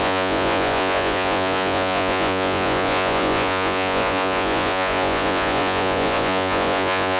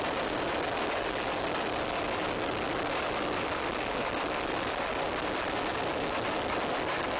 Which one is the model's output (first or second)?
first